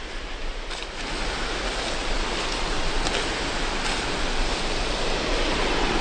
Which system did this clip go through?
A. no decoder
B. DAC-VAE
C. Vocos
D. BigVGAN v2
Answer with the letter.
D